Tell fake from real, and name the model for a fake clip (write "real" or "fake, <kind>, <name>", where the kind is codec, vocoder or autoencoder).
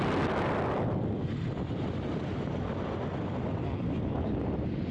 real